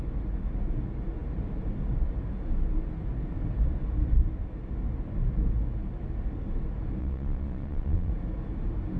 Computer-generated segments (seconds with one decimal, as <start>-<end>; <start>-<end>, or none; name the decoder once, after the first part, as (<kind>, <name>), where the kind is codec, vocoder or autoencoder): 7.0-8.1 (vocoder, Vocos)